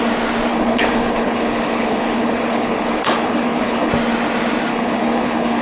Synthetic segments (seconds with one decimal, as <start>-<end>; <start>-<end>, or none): 0.5-3.9; 4.7-5.6